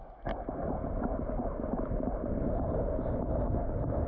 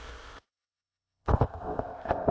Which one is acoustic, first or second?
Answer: first